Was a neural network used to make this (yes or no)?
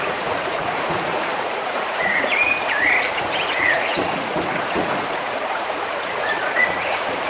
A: yes